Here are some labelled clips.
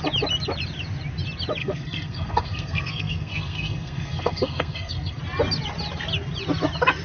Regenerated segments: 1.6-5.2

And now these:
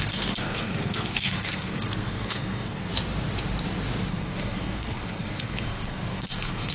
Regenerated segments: 0.0-2.9; 4.1-6.7

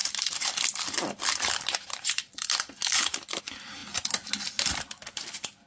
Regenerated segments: 0.0-3.4

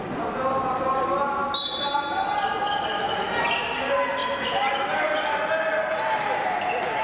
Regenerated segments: none

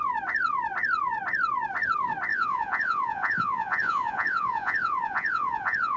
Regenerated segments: 2.3-6.0